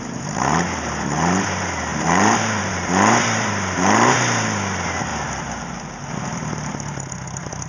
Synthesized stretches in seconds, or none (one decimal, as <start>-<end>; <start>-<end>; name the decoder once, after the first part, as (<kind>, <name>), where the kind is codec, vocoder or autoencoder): 0.0-5.1 (vocoder, BigVGAN v2); 6.2-7.7